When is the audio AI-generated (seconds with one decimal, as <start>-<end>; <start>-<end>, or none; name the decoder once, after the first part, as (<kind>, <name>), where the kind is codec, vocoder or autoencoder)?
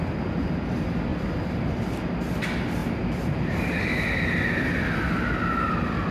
1.1-1.7 (vocoder, BigVGAN v2)